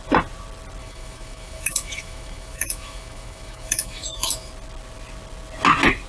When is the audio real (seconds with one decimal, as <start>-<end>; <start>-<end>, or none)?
0.0-0.8; 4.5-6.1